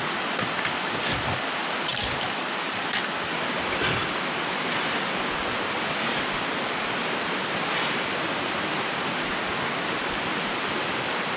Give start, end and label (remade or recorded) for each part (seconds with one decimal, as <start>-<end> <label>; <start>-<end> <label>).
0.0-11.4 recorded